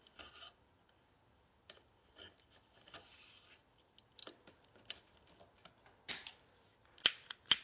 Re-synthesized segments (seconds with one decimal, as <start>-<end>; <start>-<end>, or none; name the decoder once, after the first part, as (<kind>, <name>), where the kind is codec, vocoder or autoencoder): none